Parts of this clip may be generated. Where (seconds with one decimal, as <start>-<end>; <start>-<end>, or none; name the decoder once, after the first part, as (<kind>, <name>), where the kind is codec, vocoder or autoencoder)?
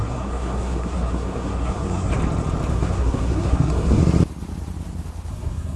0.0-2.1 (codec, SNAC); 2.7-4.0; 5.3-5.8